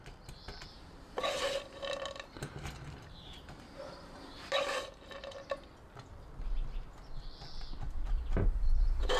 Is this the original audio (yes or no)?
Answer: yes